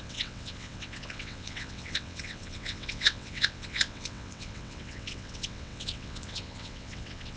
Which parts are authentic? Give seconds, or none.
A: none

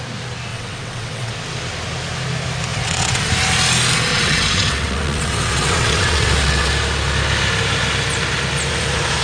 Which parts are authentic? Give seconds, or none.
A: 0.0-0.5; 1.3-2.7; 3.3-4.1; 6.7-9.2

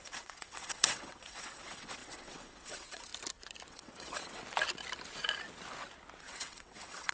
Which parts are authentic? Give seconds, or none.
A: 3.1-3.7; 4.4-6.2